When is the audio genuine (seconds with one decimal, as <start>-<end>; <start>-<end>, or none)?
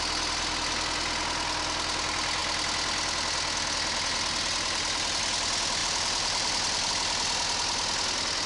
0.0-5.8; 6.9-8.5